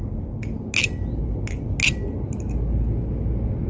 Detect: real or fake real